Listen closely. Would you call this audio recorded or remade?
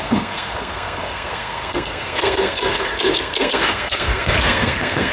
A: remade